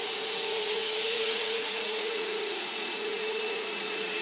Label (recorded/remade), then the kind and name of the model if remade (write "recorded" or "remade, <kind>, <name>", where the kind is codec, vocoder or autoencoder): remade, vocoder, Vocos